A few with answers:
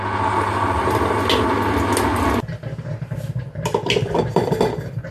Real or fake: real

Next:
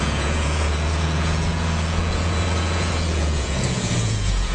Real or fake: fake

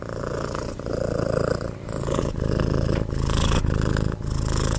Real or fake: real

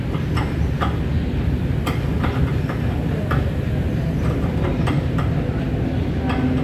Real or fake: real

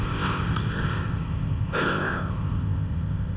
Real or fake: fake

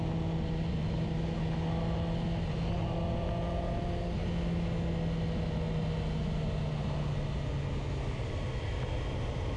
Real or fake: real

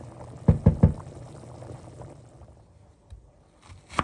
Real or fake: real